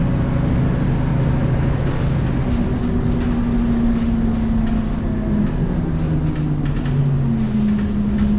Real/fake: real